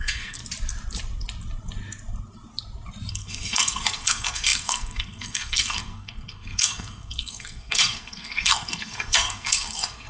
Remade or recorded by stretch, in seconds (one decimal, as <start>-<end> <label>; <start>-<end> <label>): 0.0-0.4 remade; 0.4-3.1 recorded; 3.1-10.1 remade